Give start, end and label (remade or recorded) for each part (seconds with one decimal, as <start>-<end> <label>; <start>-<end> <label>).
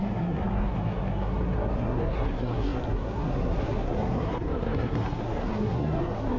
0.0-6.4 remade